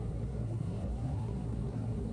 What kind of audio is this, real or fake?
fake